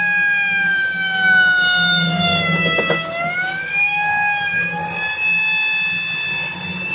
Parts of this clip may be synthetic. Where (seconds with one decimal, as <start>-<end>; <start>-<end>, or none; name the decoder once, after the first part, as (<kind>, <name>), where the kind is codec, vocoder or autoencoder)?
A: 0.0-4.8 (codec, DAC)